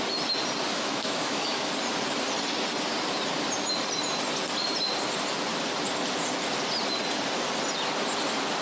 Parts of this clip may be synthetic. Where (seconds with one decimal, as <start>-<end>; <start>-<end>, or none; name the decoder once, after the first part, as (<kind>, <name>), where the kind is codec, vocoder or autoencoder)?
0.7-1.7 (autoencoder, DAC-VAE)